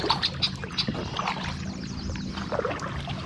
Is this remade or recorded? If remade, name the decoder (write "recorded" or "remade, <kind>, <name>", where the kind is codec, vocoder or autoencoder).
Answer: recorded